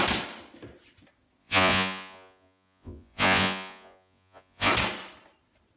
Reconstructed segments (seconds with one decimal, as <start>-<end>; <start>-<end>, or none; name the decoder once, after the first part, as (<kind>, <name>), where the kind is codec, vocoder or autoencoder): 1.4-4.7 (vocoder, Vocos)